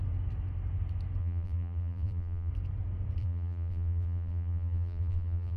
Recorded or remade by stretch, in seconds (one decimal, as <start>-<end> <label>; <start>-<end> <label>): 0.0-1.2 recorded; 1.2-2.5 remade; 2.5-3.2 recorded; 3.2-5.6 remade